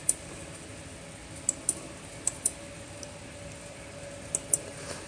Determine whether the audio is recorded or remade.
recorded